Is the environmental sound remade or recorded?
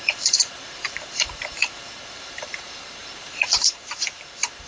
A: remade